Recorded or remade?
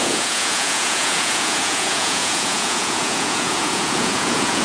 remade